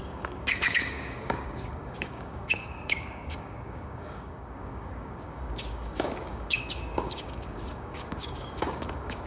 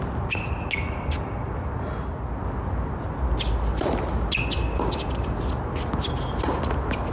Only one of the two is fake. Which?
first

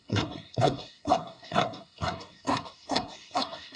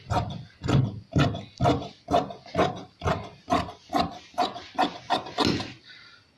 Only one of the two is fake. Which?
first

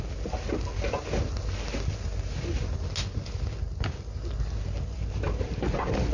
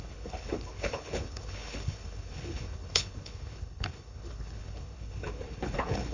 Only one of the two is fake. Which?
second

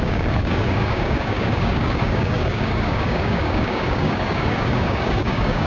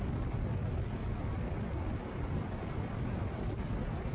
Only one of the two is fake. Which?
first